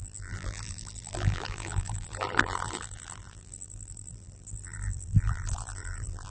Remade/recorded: remade